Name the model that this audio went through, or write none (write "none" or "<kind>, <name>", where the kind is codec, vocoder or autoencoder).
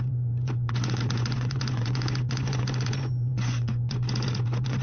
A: vocoder, Vocos